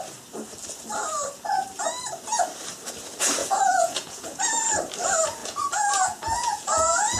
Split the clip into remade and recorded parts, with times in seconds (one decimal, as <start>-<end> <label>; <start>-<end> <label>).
0.0-3.4 recorded; 3.4-4.4 remade; 4.4-5.4 recorded; 5.4-7.2 remade